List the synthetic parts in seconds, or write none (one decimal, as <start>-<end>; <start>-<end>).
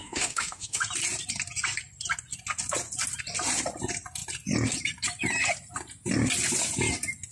0.0-0.8